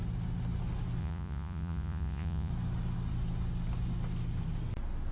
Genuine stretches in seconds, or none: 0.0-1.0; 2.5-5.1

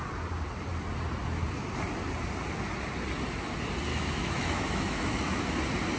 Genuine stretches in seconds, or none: 0.0-3.9; 5.4-6.0

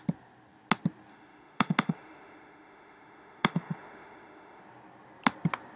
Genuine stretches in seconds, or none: 0.0-1.1; 4.6-5.8

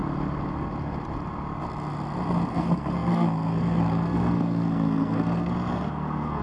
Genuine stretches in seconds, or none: 0.0-2.5

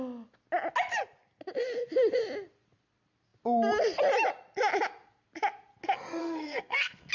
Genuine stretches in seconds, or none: 0.0-6.2

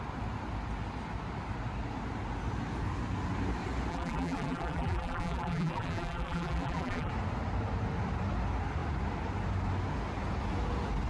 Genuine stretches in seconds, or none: 0.0-3.9; 7.1-11.1

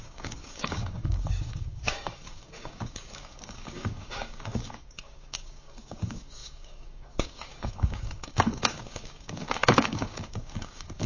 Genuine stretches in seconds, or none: none